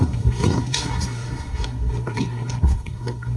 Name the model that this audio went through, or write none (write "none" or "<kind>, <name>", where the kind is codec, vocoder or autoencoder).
codec, SNAC